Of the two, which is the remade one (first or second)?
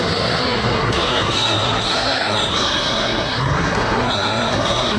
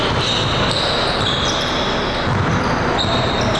first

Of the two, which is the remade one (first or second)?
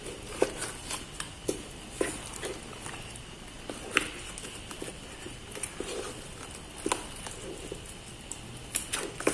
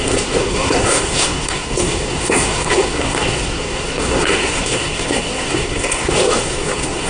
second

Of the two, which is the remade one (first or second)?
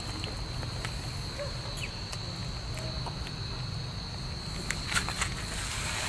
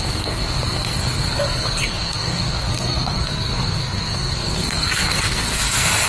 second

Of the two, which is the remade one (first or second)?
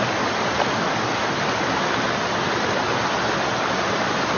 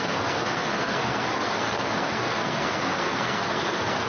second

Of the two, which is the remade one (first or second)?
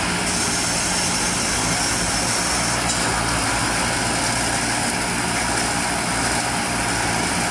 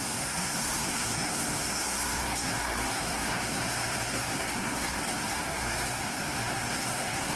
second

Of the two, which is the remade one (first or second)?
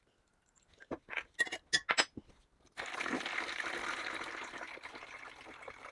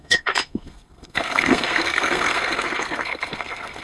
second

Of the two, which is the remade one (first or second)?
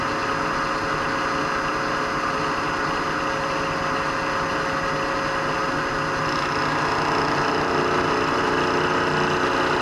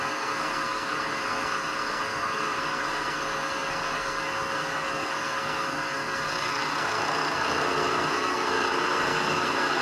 second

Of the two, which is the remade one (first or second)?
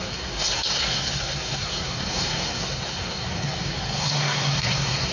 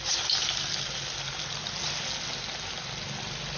first